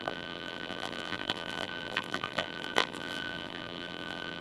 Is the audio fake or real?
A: fake